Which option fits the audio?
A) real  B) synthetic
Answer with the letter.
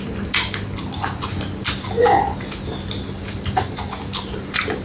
A